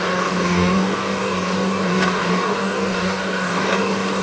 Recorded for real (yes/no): no